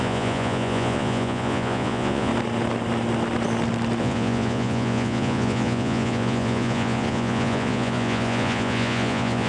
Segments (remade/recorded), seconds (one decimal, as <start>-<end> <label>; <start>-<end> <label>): 0.0-2.3 remade; 2.3-4.0 recorded; 4.0-9.5 remade